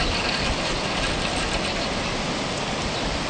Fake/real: fake